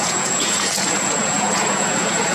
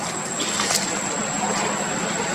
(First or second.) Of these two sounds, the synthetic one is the first